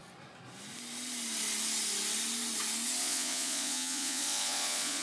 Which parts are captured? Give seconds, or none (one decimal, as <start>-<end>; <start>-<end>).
0.0-3.0